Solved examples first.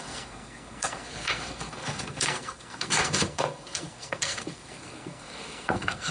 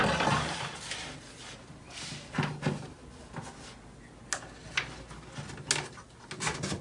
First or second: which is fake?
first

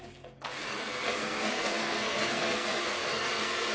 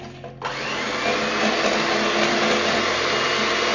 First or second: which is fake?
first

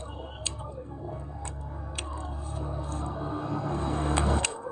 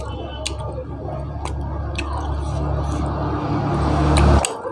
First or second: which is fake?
first